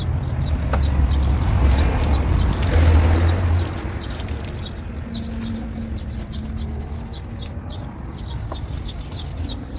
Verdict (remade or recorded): recorded